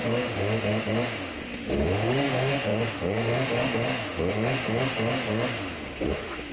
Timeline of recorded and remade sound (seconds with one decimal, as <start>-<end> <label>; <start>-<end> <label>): 0.0-6.5 remade